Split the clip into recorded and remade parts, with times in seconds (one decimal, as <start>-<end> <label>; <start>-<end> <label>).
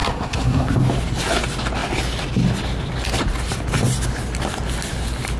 0.0-0.8 remade; 0.8-5.4 recorded